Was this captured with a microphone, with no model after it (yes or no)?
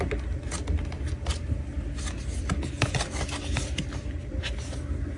yes